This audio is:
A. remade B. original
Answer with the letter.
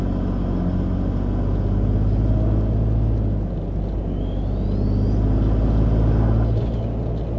B